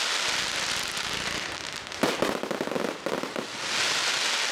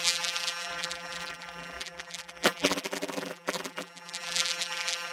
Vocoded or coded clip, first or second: second